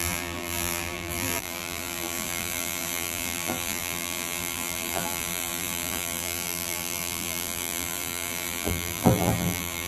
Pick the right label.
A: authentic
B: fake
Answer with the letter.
B